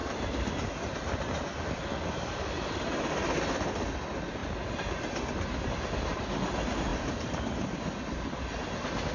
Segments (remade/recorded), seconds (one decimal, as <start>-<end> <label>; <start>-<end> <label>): 0.0-9.1 recorded